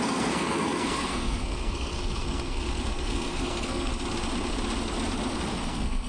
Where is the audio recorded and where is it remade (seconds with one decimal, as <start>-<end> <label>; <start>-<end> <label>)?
0.0-3.9 remade; 3.9-5.5 recorded; 5.5-6.1 remade